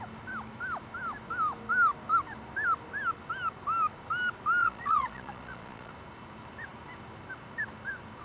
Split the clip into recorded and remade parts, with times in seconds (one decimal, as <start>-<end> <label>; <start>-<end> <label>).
0.0-4.6 recorded; 4.6-5.9 remade; 5.9-8.2 recorded